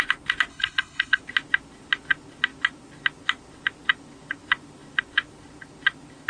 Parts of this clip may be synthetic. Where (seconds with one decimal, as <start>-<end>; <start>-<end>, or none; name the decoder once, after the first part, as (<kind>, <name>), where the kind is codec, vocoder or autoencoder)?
0.5-1.2 (codec, HILCodec)